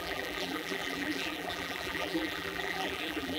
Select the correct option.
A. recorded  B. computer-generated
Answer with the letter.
B